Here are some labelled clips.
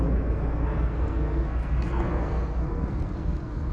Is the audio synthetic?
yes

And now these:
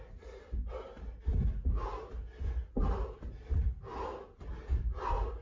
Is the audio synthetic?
no